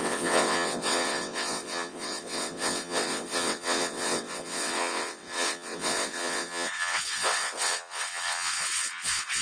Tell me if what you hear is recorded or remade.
remade